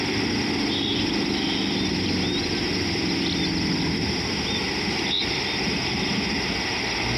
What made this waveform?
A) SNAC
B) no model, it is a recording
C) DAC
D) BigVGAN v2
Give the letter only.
B